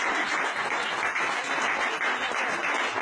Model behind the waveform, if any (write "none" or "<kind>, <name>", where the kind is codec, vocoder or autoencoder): none